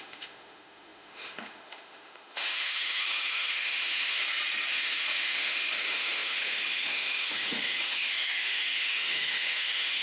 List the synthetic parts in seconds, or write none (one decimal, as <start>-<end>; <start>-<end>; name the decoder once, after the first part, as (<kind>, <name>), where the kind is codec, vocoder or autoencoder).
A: 0.0-4.2 (autoencoder, DAC-VAE); 4.7-10.0